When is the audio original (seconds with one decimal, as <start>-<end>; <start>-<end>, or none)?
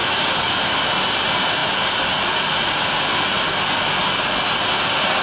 0.8-5.2